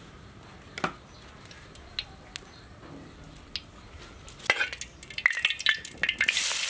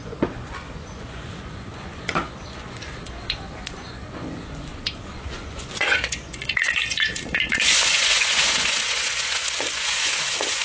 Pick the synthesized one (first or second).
second